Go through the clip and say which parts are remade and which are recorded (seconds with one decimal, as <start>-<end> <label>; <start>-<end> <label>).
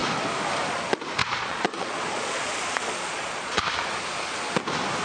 0.0-1.2 recorded; 1.2-3.6 remade; 3.6-5.0 recorded